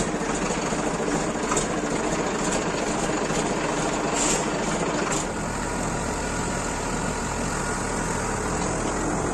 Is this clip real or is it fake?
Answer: real